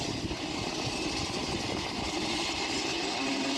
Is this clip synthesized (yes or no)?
no